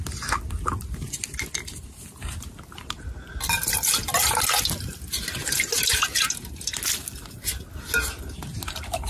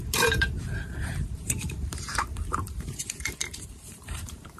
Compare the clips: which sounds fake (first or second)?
second